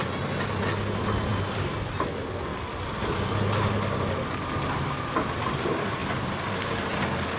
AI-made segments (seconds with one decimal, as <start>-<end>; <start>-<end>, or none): none